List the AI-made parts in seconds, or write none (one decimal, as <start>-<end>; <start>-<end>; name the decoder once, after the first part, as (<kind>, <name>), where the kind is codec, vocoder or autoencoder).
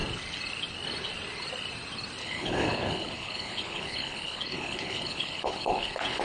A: 2.2-6.2 (codec, HILCodec)